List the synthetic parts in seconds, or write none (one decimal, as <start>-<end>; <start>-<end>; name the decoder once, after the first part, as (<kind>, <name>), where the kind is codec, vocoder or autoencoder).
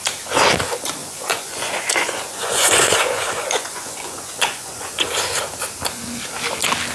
1.0-5.1 (vocoder, Vocos)